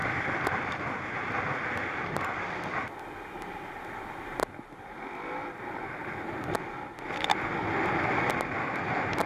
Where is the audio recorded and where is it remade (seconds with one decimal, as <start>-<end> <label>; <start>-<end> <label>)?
0.0-9.3 recorded

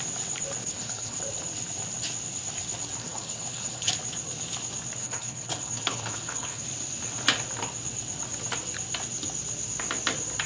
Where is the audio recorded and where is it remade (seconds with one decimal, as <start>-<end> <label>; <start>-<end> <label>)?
0.0-0.6 recorded; 0.6-1.2 remade; 1.2-3.0 recorded; 3.0-3.9 remade; 3.9-5.0 recorded; 5.0-6.6 remade; 6.6-10.5 recorded